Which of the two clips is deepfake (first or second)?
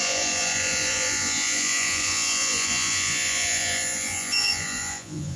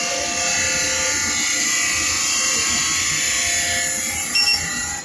first